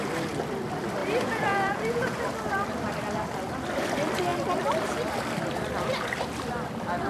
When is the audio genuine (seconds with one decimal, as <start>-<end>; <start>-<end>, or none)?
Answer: 0.0-1.0; 2.2-7.1